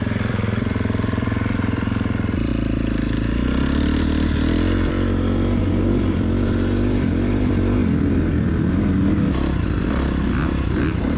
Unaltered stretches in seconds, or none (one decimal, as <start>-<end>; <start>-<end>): 2.5-5.6; 7.8-11.2